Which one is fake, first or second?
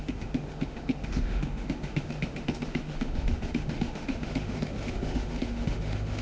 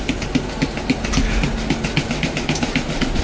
first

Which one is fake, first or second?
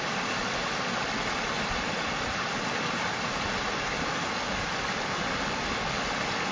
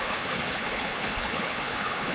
second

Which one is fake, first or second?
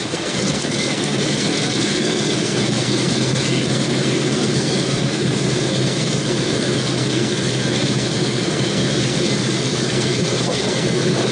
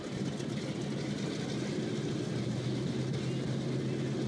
first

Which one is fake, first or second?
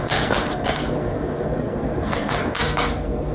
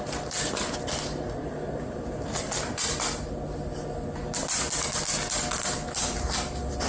first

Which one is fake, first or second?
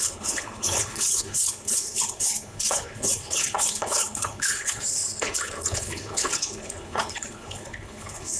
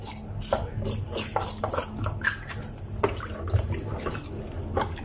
first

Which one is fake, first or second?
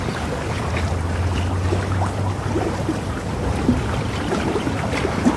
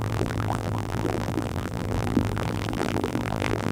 second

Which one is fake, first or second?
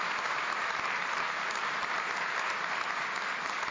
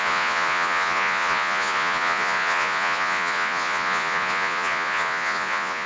second